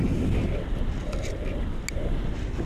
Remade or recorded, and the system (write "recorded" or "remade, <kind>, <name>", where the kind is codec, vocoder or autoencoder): recorded